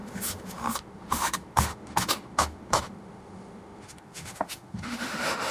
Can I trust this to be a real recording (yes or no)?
no